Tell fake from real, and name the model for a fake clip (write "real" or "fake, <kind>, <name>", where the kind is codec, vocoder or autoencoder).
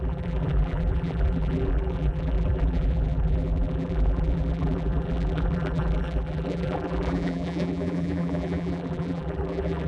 fake, vocoder, BigVGAN v2